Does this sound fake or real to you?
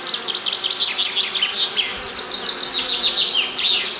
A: real